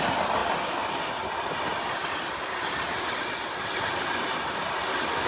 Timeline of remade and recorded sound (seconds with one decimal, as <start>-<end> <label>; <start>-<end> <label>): 0.0-0.4 recorded; 0.4-0.9 remade; 0.9-1.7 recorded; 1.7-5.3 remade